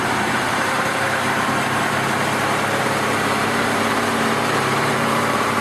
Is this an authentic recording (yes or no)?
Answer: no